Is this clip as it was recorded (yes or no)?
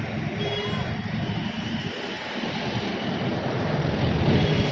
yes